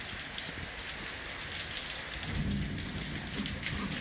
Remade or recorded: recorded